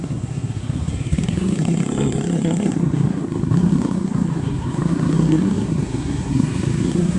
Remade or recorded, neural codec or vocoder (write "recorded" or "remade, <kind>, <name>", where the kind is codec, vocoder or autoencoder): remade, codec, SNAC